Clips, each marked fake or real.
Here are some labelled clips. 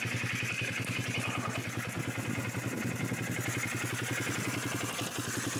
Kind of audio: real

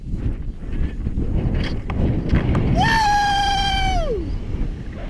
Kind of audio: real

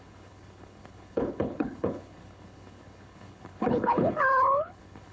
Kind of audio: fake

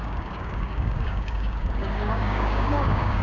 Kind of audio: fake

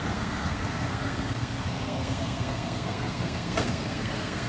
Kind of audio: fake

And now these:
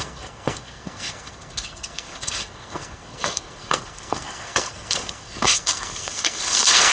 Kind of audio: fake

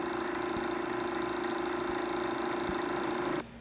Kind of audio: real